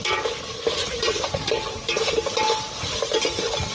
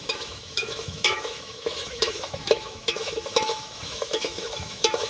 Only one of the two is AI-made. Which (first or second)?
second